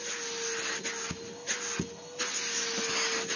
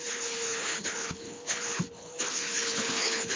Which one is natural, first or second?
first